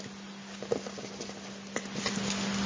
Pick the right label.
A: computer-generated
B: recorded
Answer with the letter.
B